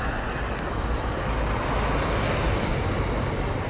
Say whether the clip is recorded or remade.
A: recorded